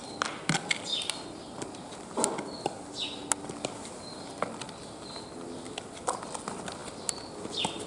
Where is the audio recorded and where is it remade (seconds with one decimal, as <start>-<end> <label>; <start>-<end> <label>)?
0.0-0.9 recorded; 0.9-1.9 remade; 1.9-3.8 recorded; 3.8-4.3 remade; 4.3-7.9 recorded

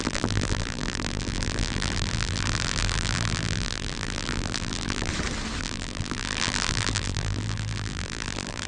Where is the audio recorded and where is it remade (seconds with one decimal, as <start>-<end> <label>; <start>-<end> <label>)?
0.0-5.1 remade; 5.1-5.6 recorded; 5.6-8.7 remade

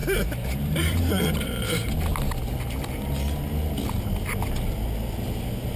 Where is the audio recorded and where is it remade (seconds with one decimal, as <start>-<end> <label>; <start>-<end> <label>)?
0.0-2.4 remade; 2.4-5.8 recorded

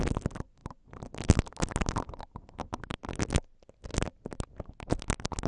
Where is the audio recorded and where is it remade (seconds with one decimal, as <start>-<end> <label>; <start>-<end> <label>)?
0.0-5.5 recorded

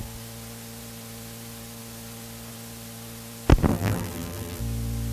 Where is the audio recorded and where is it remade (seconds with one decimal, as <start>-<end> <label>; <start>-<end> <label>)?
0.0-3.7 recorded; 3.7-4.6 remade; 4.6-5.1 recorded

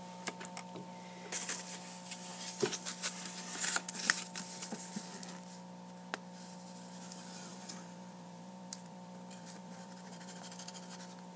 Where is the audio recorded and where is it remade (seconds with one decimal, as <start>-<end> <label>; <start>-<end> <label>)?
0.0-7.5 recorded; 7.5-10.7 remade; 10.7-11.4 recorded

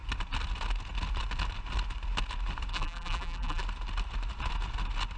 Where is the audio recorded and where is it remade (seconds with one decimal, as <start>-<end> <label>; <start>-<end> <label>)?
0.0-2.7 recorded; 2.7-3.6 remade; 3.6-5.2 recorded